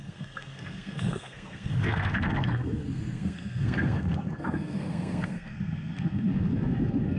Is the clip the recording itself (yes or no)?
no